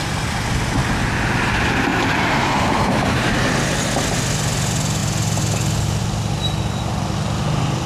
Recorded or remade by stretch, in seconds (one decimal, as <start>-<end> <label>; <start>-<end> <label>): 0.0-1.9 recorded; 1.9-3.5 remade; 3.5-7.9 recorded